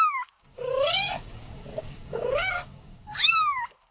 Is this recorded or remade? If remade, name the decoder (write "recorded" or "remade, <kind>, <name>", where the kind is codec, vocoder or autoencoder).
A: remade, codec, DAC